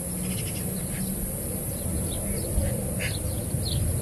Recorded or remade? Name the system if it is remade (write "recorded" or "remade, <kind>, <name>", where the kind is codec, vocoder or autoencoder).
recorded